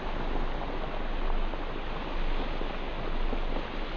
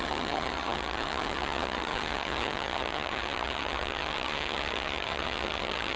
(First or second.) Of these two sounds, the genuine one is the first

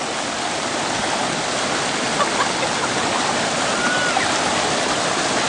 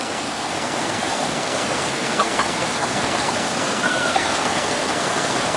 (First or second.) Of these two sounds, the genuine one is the first